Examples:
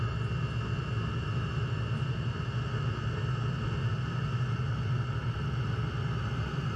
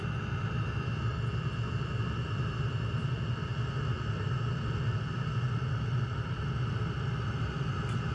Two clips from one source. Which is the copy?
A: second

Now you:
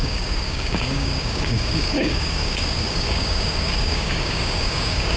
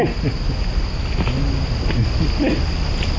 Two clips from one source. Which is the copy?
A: first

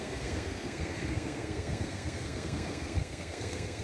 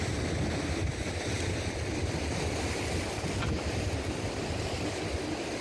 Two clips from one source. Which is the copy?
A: first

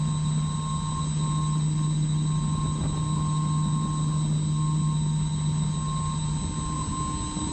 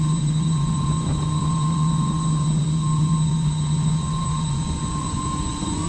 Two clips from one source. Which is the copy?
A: second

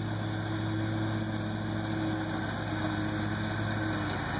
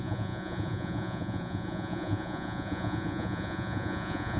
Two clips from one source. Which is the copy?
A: second